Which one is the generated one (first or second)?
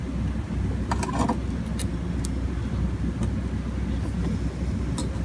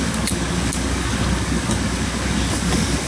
second